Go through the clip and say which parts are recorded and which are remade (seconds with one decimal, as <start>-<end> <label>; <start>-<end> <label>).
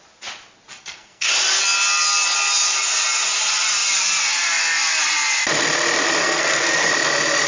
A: 0.0-0.7 recorded; 0.7-1.3 remade; 1.3-6.2 recorded; 6.2-6.9 remade; 6.9-7.5 recorded